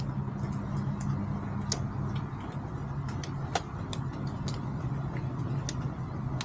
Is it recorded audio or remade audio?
recorded